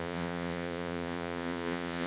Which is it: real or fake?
fake